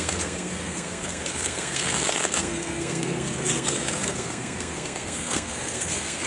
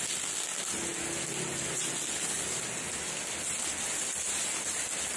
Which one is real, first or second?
second